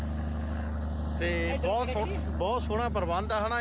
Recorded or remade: recorded